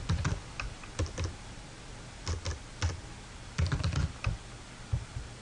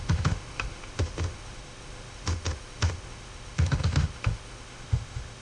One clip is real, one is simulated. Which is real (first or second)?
first